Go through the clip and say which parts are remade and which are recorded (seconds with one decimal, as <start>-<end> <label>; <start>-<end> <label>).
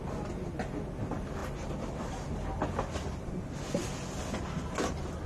0.0-5.3 recorded